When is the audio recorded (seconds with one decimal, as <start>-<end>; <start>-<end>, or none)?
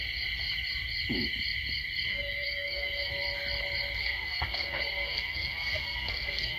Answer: 0.0-2.1; 3.1-4.0